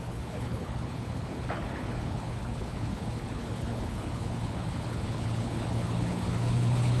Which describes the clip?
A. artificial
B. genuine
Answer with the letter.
A